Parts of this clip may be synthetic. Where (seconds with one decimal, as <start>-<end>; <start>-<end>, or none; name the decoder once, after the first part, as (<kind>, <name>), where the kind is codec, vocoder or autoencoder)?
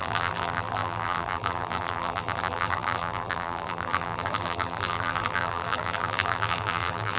0.0-7.2 (vocoder, BigVGAN v2)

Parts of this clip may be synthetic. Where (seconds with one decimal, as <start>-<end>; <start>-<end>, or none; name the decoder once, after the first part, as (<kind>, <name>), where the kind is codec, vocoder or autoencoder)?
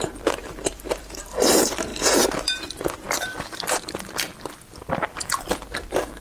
0.0-1.9 (vocoder, BigVGAN v2); 5.5-6.2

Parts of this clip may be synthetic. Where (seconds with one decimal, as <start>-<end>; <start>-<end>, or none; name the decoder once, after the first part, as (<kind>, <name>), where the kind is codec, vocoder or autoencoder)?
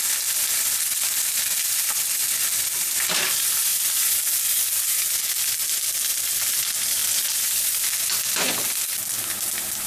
none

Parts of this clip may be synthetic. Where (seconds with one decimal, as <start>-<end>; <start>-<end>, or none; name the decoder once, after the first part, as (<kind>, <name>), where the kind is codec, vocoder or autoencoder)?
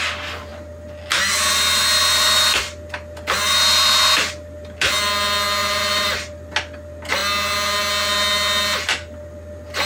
5.6-6.1 (vocoder, BigVGAN v2)